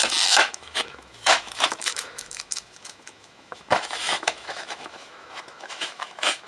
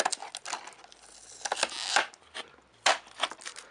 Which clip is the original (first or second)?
second